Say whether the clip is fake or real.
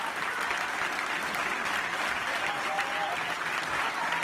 real